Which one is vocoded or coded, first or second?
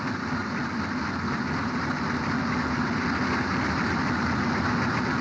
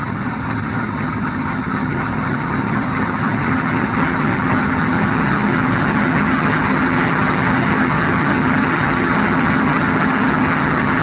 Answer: second